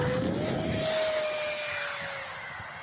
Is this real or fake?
real